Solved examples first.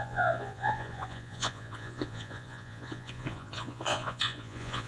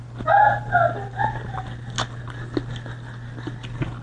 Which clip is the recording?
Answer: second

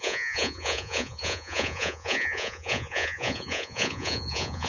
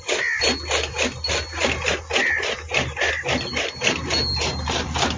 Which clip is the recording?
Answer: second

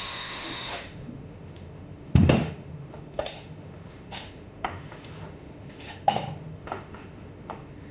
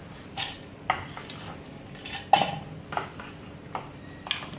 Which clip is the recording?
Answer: second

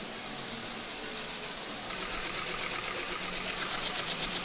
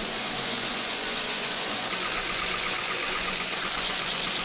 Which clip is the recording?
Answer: first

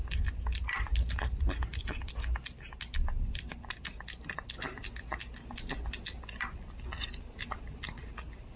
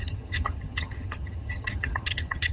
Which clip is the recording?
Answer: first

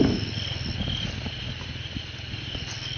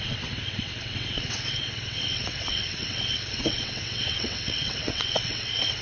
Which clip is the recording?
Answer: first